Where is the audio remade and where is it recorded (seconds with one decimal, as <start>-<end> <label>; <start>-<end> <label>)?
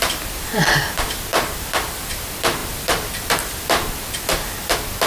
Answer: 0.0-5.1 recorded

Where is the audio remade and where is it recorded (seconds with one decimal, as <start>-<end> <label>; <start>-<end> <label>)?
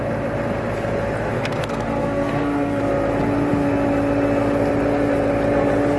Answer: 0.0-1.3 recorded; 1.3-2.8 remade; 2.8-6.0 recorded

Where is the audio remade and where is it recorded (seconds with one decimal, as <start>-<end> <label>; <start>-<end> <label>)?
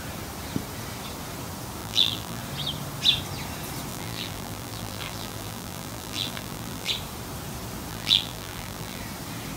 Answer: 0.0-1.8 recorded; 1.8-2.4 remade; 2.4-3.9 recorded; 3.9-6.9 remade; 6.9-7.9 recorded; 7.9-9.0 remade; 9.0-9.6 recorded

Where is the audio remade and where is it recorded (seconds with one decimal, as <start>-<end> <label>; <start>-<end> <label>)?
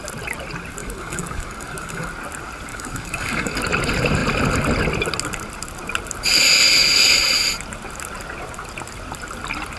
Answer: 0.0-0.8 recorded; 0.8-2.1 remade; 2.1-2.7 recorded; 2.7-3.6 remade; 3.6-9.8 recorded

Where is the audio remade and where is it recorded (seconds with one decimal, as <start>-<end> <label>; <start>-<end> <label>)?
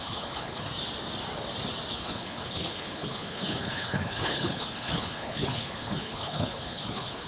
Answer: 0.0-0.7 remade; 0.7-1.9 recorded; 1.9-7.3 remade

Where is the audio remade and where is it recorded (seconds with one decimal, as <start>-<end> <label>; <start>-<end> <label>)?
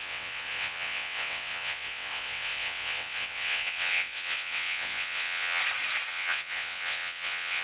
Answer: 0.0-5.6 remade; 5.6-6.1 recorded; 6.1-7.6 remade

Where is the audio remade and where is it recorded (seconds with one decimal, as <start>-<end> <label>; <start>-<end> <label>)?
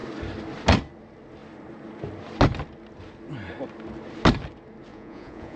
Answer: 0.0-4.9 recorded; 4.9-5.6 remade